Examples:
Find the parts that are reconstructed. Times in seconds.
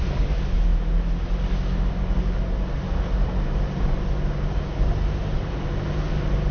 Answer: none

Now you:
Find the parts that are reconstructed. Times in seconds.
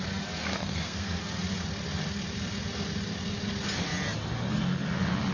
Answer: 0.4-1.2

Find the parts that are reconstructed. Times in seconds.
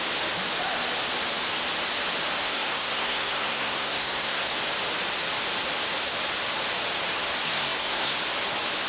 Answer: 2.4-4.4; 7.4-8.2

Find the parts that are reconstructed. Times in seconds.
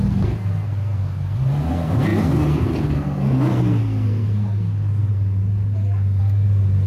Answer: 0.0-6.9